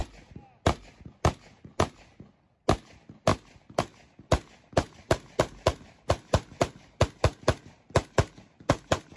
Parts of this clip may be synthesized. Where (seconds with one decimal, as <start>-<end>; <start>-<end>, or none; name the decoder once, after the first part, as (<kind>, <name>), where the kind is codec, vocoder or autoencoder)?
none